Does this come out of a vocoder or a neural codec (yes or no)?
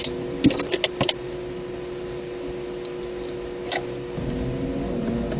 no